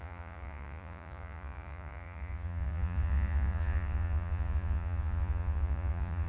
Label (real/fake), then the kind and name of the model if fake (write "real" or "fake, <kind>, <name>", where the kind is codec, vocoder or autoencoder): fake, vocoder, Vocos